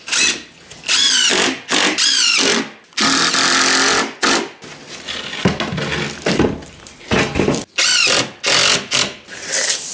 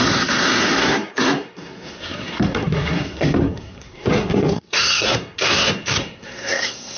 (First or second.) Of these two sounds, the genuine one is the first